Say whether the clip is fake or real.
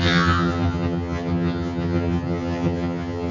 fake